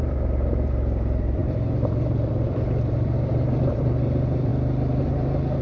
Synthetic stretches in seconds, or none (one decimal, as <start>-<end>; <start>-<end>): 0.0-4.5; 5.0-5.6

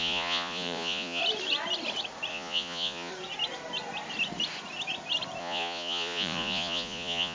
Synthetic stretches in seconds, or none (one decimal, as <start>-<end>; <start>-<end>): 0.0-1.2; 2.3-3.1; 5.4-7.3

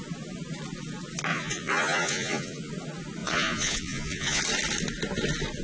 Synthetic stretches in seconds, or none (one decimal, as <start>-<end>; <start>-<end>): 1.3-2.7; 3.2-4.4

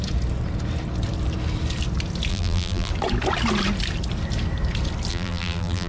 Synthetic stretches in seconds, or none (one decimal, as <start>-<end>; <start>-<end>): 2.3-2.9; 5.1-5.9

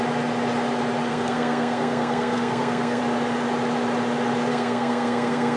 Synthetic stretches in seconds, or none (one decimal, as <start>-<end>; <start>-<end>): 1.1-3.0; 4.5-5.6

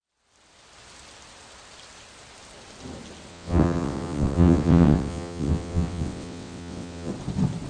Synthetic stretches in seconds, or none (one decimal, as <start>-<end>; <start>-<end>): 3.3-7.1